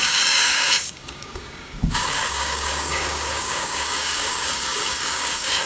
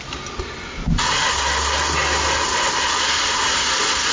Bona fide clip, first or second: second